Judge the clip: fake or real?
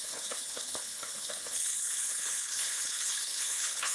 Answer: fake